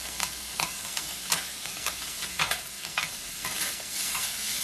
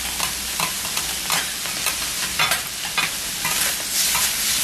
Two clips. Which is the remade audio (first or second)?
first